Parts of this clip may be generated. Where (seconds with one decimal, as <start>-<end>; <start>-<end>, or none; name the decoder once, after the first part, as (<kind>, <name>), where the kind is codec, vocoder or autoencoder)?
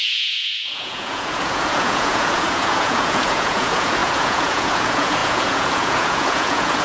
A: 0.0-6.8 (vocoder, Vocos)